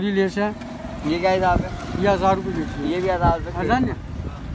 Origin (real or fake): real